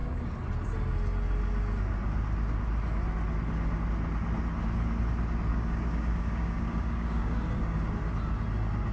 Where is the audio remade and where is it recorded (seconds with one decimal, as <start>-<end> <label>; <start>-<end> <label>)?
0.0-5.5 recorded; 5.5-7.9 remade; 7.9-8.9 recorded